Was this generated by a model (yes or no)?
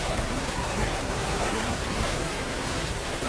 yes